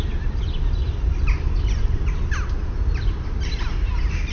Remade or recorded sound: recorded